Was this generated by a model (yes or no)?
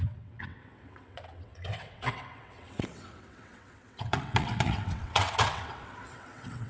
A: yes